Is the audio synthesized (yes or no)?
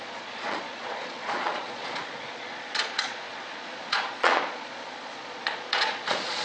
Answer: yes